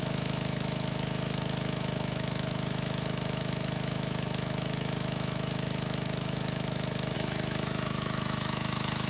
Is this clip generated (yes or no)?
yes